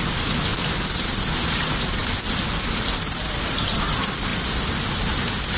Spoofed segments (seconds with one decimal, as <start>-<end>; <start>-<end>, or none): 0.0-2.0; 3.2-4.3; 4.9-5.6